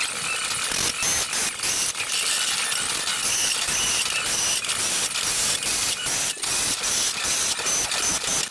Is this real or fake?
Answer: real